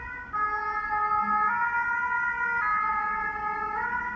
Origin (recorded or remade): recorded